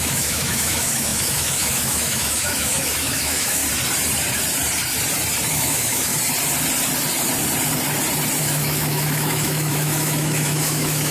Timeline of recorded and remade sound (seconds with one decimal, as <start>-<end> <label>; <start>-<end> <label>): 0.0-3.6 remade; 3.6-5.5 recorded; 5.5-6.1 remade; 6.1-8.4 recorded; 8.4-11.1 remade

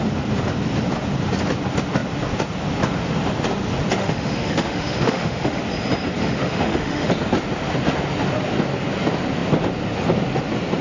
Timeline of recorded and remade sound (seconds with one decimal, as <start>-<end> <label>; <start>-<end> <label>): 0.0-4.0 recorded; 4.0-5.6 remade; 5.6-6.2 recorded; 6.2-7.1 remade; 7.1-10.8 recorded